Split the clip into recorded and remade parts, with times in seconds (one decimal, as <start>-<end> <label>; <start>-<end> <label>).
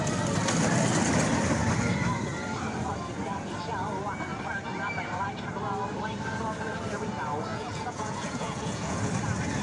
0.0-7.5 recorded; 7.5-9.1 remade; 9.1-9.6 recorded